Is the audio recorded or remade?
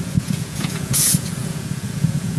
remade